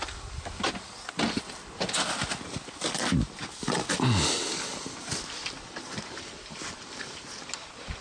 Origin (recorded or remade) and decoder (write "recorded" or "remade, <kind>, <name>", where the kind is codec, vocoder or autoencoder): recorded